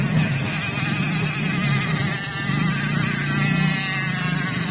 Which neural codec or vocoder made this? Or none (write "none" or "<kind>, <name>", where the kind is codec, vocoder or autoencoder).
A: none